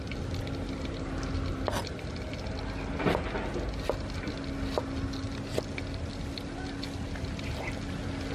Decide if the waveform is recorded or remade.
recorded